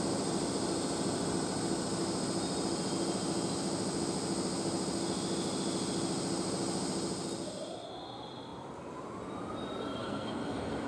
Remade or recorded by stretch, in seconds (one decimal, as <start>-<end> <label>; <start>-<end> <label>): 0.0-10.0 recorded; 10.0-10.9 remade